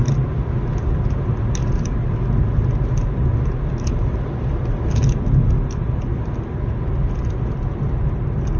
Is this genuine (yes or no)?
yes